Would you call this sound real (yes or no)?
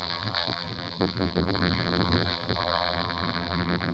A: no